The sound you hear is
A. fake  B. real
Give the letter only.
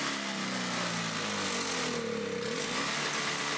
B